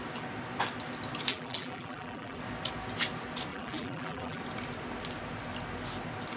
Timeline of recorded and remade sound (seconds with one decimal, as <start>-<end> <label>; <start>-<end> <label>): 0.0-1.3 recorded; 1.3-2.4 remade; 2.4-3.5 recorded; 3.5-4.4 remade; 4.4-6.4 recorded